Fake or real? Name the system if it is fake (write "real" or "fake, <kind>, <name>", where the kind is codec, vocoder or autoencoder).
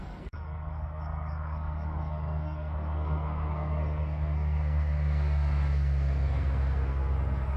fake, codec, SNAC